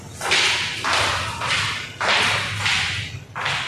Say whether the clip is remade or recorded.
recorded